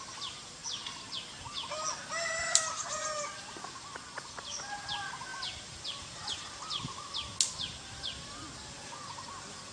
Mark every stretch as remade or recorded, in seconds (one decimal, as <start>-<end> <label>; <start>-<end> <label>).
0.0-9.7 recorded